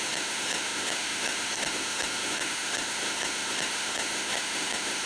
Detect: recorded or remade remade